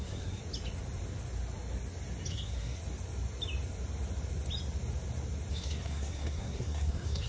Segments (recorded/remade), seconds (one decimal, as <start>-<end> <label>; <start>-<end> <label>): 0.0-0.4 remade; 0.4-2.3 recorded; 2.3-2.8 remade; 2.8-5.5 recorded; 5.5-7.3 remade